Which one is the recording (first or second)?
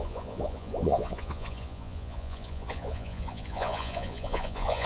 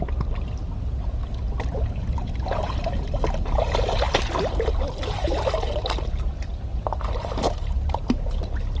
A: second